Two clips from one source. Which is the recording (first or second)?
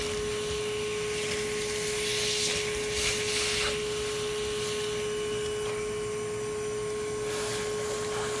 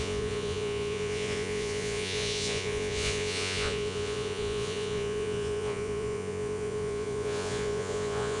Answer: first